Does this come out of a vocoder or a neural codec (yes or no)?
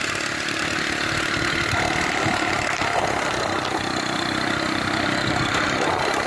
no